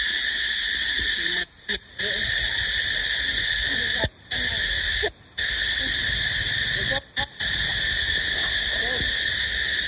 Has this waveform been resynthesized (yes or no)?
no